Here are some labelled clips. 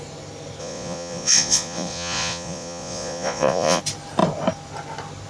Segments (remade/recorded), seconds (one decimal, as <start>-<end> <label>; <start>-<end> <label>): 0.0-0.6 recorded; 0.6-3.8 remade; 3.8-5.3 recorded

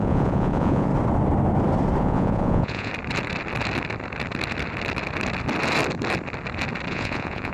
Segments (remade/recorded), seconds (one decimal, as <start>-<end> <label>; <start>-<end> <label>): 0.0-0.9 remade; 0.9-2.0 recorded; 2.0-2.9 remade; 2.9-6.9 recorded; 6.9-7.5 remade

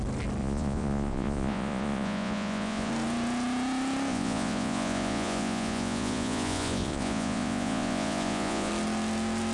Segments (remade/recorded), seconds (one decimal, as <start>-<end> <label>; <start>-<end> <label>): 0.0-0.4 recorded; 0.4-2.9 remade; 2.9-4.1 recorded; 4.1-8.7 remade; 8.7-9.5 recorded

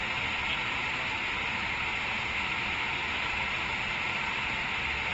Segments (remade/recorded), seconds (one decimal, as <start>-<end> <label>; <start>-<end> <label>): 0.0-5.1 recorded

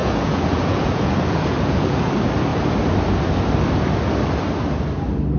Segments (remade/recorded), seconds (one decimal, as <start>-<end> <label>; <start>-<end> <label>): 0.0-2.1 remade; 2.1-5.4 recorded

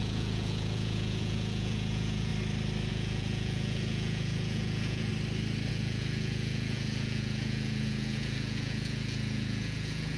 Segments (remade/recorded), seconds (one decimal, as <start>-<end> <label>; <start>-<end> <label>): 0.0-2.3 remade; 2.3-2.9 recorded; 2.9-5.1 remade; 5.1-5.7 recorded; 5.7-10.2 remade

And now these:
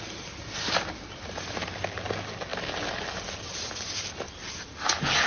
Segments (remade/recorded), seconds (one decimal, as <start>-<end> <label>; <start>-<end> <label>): 0.0-5.3 recorded

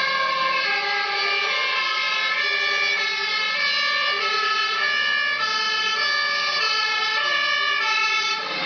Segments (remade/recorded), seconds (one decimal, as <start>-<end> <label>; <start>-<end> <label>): 0.0-8.7 recorded